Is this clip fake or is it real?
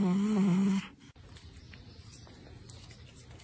real